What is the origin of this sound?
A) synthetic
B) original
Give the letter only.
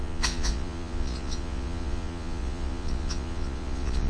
A